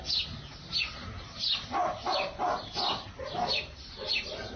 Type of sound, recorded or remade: recorded